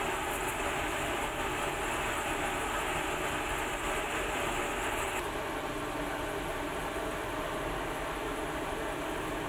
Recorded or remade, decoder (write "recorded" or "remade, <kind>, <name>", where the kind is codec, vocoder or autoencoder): recorded